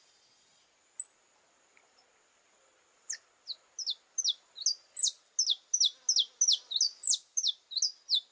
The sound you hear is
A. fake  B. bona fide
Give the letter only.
B